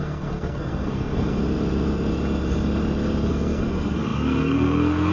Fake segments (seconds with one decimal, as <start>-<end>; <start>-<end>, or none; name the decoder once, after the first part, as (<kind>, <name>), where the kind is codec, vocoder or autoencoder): 0.0-1.4 (codec, SNAC); 3.3-5.1